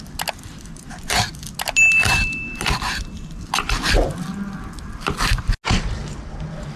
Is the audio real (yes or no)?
yes